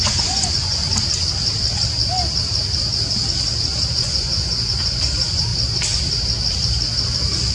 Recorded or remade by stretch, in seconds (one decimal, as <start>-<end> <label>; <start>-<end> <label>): 0.0-0.8 remade; 0.8-3.9 recorded; 3.9-5.5 remade; 5.5-7.5 recorded